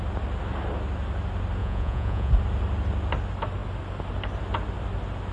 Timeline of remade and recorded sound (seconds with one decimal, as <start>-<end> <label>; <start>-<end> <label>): 0.0-1.6 recorded; 1.6-2.3 remade; 2.3-5.3 recorded